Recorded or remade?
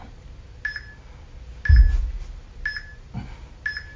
recorded